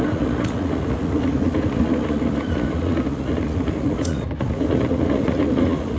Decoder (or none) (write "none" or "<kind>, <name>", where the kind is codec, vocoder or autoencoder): vocoder, Vocos